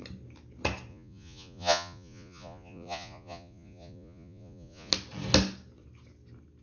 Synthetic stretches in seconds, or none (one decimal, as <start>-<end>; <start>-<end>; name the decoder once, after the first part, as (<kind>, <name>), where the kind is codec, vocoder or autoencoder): 0.9-4.9 (vocoder, Vocos)